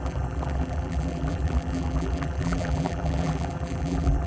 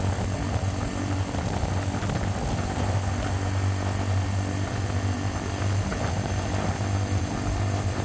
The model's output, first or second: first